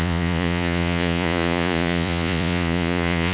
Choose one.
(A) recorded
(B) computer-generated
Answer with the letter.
B